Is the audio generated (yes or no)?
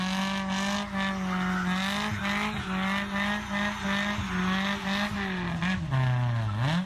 no